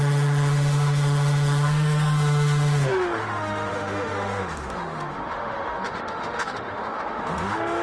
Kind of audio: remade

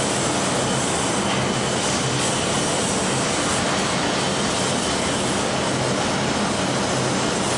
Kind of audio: recorded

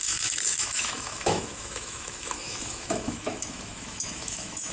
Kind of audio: remade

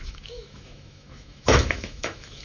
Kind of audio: remade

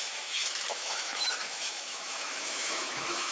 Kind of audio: remade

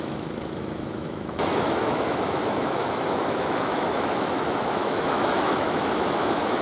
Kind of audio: remade